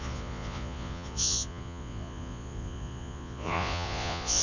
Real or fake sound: fake